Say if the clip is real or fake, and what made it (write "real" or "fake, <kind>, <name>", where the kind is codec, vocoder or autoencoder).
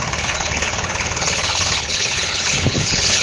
fake, codec, HILCodec